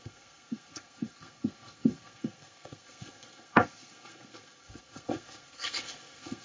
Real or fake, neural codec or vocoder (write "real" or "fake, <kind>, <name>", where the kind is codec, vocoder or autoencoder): fake, codec, SNAC